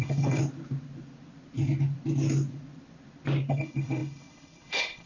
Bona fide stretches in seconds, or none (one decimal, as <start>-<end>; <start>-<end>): 0.4-3.5